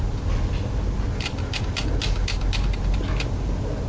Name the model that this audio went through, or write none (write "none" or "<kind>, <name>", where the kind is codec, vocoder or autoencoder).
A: none